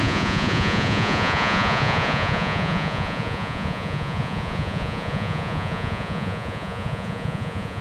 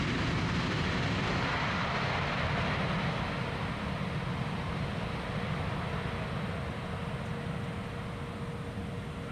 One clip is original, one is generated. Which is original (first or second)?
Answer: second